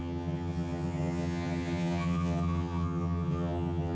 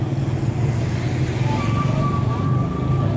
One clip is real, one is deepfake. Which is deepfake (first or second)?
first